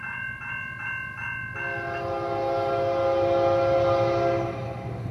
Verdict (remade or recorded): recorded